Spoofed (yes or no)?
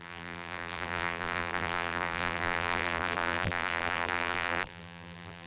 yes